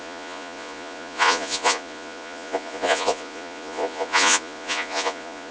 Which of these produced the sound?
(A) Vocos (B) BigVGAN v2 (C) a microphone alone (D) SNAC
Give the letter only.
A